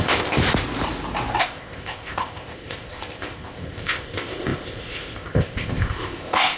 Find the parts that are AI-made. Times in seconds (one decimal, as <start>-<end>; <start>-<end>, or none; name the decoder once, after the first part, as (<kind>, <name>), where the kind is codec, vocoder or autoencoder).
0.0-0.4 (codec, ZipCodec); 1.4-6.6